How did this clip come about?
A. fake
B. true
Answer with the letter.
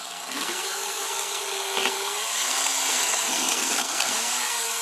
A